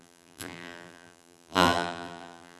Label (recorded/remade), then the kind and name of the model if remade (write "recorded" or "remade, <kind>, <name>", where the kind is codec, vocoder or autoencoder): remade, vocoder, BigVGAN v2